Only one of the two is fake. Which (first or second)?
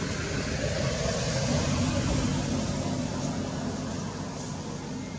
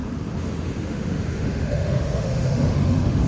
second